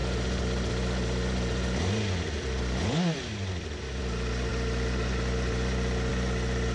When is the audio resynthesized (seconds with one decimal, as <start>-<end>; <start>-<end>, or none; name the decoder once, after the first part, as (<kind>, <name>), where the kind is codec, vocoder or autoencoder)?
none